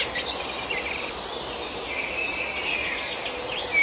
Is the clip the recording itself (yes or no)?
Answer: yes